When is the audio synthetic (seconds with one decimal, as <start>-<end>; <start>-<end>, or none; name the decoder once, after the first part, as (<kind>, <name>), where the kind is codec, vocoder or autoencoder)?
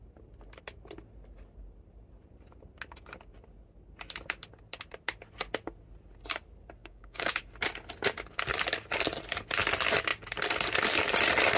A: 6.8-7.4 (codec, DAC)